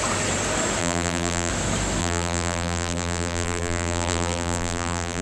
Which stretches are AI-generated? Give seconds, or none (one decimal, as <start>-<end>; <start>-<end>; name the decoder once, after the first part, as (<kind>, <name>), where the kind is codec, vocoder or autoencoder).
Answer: 0.8-1.5 (vocoder, BigVGAN v2); 2.0-5.2